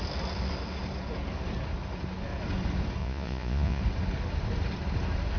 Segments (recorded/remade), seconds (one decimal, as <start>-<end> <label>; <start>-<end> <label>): 0.0-3.0 recorded; 3.0-3.8 remade; 3.8-5.4 recorded